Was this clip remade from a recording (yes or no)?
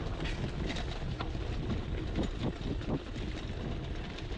no